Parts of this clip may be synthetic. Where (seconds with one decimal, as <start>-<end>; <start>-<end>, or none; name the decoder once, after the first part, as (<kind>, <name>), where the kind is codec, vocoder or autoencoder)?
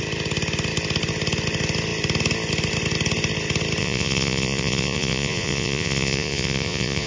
3.8-7.1 (vocoder, Vocos)